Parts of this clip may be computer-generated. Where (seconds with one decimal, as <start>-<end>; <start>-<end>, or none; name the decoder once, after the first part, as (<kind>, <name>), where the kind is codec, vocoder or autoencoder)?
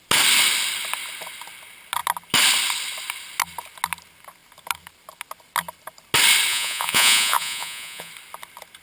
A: 6.5-8.1 (vocoder, Vocos)